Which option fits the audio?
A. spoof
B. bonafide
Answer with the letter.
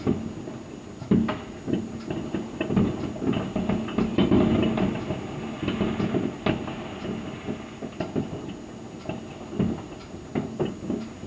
B